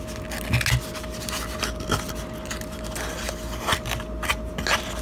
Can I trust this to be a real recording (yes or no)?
yes